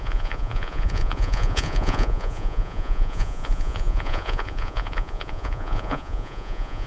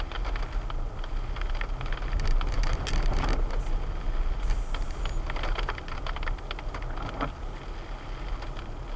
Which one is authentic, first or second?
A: second